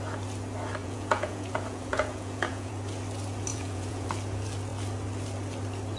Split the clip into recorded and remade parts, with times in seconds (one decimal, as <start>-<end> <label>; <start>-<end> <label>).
0.0-0.8 recorded; 0.8-2.7 remade; 2.7-3.5 recorded; 3.5-4.1 remade; 4.1-6.0 recorded

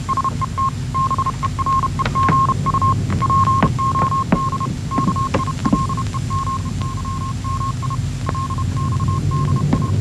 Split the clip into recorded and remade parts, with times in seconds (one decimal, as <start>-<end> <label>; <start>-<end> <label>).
0.0-10.0 recorded

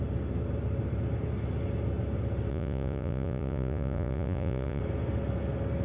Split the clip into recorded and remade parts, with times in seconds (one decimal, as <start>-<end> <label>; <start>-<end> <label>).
0.0-2.5 recorded; 2.5-4.8 remade; 4.8-5.8 recorded

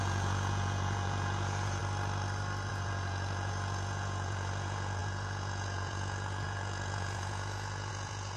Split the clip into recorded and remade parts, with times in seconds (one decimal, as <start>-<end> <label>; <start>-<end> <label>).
0.0-1.8 remade; 1.8-2.7 recorded; 2.7-8.4 remade

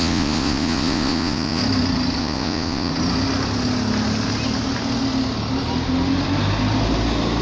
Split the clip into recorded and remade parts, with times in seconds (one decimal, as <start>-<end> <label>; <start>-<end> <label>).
0.0-1.6 remade; 1.6-2.2 recorded; 2.2-2.9 remade; 2.9-7.4 recorded

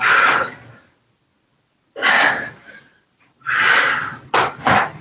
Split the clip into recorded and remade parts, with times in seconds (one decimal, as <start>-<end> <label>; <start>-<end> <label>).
0.0-5.0 recorded

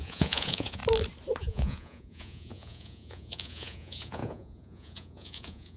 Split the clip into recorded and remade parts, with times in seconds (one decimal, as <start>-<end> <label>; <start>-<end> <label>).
0.0-0.8 remade; 0.8-1.4 recorded; 1.4-5.8 remade

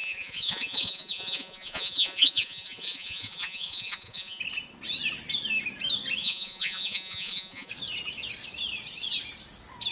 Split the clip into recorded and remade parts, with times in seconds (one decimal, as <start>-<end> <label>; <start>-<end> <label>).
0.0-4.4 remade; 4.4-6.2 recorded; 6.2-7.7 remade; 7.7-9.9 recorded